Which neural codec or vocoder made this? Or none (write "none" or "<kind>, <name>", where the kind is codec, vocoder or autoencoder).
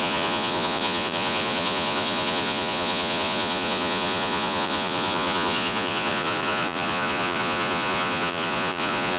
vocoder, Vocos